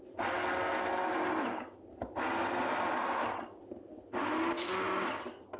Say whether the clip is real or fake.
real